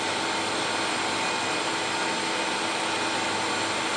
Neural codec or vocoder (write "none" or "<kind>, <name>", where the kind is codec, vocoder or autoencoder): none